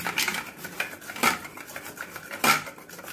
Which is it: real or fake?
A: real